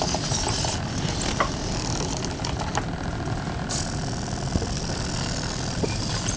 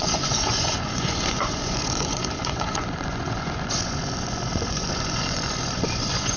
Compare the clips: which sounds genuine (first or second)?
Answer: first